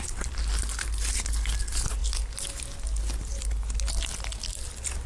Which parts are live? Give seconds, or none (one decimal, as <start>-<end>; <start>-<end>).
0.0-5.1